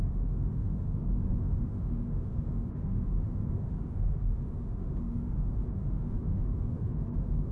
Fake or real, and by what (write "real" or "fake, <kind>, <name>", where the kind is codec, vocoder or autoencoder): fake, autoencoder, DAC-VAE